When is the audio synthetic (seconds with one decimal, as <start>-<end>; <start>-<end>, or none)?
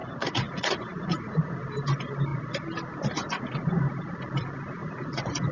0.0-1.6; 4.8-5.5